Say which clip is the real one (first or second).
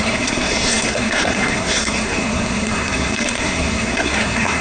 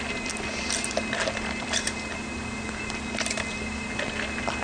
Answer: second